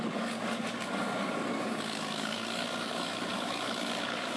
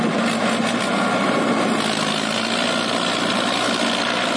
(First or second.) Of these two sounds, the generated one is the first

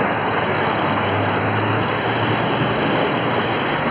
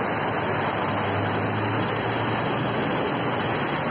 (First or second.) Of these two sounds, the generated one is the first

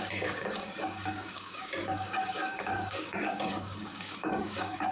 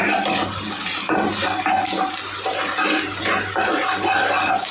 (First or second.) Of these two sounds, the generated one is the first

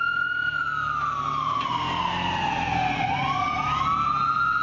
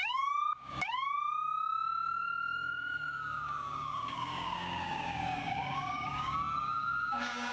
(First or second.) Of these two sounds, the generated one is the second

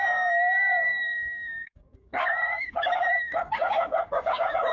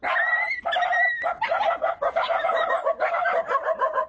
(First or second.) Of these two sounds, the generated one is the first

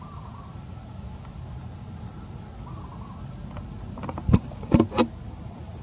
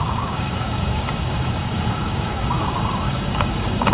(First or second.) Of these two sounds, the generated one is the second